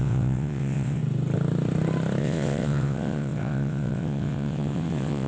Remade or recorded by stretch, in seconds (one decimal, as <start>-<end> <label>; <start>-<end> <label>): 0.0-1.0 remade; 1.0-2.2 recorded; 2.2-5.3 remade